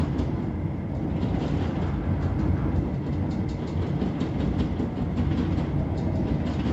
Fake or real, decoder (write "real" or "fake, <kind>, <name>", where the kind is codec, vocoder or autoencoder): real